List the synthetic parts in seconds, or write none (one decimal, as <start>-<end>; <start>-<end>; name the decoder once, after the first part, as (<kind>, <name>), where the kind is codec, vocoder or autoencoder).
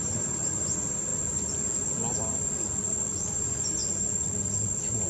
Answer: 0.0-1.1 (vocoder, BigVGAN v2); 3.3-3.8